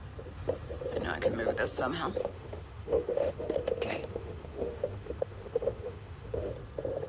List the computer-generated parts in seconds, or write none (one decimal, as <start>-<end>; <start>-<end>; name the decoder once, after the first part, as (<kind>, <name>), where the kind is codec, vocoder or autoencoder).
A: 2.2-6.5 (autoencoder, DAC-VAE)